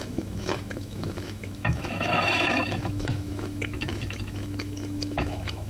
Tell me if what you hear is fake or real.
fake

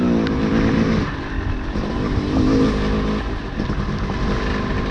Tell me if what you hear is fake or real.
real